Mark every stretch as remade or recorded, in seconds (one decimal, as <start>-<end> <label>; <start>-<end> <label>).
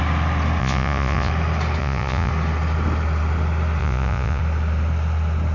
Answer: 0.0-0.6 recorded; 0.6-1.3 remade; 1.3-1.8 recorded; 1.8-2.3 remade; 2.3-3.8 recorded; 3.8-4.4 remade; 4.4-5.5 recorded